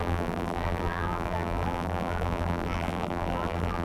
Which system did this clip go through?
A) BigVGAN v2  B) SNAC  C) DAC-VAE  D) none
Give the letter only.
A